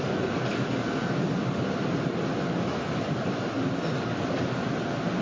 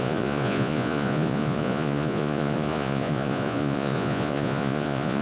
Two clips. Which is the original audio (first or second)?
first